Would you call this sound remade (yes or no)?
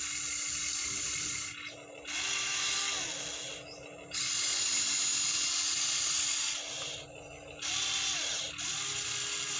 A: no